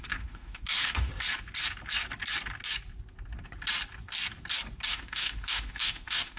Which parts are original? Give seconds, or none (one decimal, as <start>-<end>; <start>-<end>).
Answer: 1.1-4.9